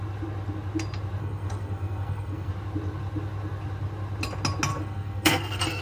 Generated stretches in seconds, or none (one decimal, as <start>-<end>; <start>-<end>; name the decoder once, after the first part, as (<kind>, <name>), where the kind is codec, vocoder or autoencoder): 1.2-2.5 (codec, SNAC); 4.7-5.8